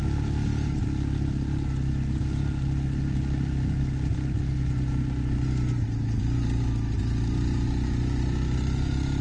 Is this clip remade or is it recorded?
recorded